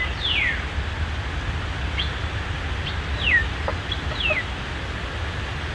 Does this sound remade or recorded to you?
recorded